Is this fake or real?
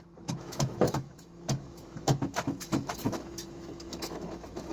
fake